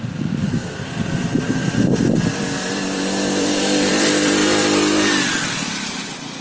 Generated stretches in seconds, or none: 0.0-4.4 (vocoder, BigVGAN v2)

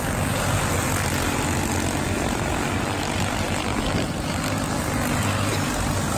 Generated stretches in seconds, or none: none